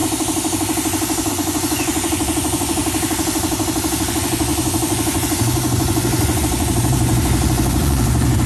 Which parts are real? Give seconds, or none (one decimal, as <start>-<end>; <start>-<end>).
0.0-1.3; 2.8-4.1